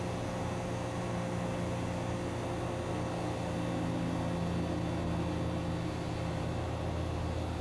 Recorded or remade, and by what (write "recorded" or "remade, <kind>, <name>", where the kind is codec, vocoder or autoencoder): recorded